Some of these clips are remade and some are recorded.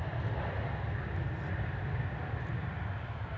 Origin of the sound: recorded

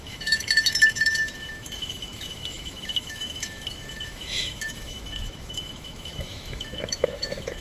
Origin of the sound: remade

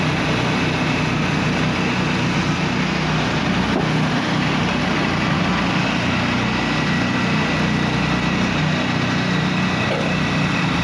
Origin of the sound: recorded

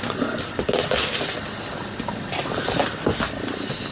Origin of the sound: recorded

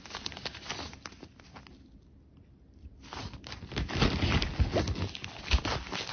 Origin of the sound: recorded